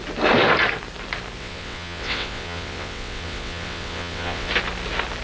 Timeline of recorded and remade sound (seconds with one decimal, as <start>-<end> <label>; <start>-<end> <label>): 0.0-1.4 recorded; 1.4-4.5 remade; 4.5-5.2 recorded

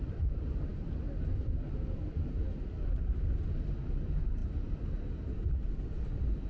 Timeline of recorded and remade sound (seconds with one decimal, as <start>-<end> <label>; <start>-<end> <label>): 0.0-6.5 recorded

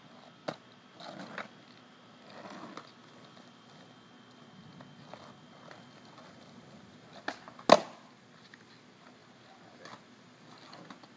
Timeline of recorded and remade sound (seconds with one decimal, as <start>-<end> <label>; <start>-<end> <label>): 0.0-11.2 recorded

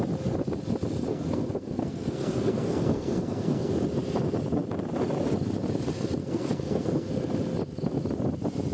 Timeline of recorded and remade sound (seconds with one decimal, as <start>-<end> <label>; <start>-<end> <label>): 0.0-1.1 recorded; 1.1-3.7 remade; 3.7-6.2 recorded; 6.2-7.1 remade; 7.1-8.7 recorded

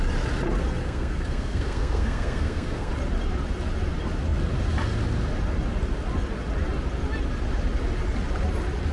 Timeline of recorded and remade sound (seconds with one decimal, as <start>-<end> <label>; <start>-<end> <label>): 0.0-0.8 recorded; 0.8-2.9 remade; 2.9-8.9 recorded